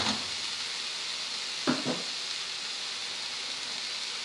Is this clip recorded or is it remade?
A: recorded